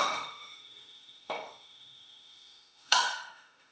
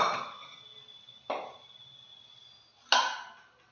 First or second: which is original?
second